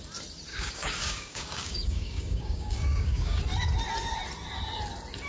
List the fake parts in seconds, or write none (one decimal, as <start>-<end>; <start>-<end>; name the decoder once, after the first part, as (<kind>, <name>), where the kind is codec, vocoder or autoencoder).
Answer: 0.5-3.4 (codec, DAC)